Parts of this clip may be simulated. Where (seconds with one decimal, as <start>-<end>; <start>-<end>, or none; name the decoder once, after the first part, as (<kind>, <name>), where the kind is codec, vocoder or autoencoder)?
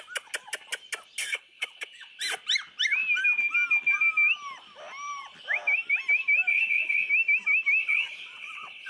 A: 1.3-2.2 (vocoder, WaveNeXt); 6.5-7.1; 7.8-8.9